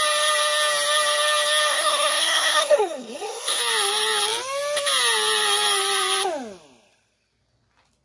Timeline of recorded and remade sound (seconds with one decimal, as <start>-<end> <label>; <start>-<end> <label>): 0.0-1.7 recorded; 1.7-3.6 remade; 3.6-8.0 recorded